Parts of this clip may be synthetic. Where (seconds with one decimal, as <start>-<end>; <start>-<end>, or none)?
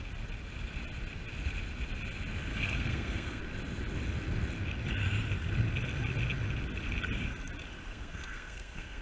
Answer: 2.5-3.4; 7.9-9.0